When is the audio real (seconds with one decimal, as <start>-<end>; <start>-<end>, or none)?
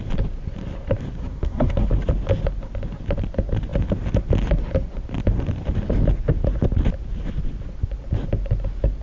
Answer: 0.0-1.2; 1.9-9.0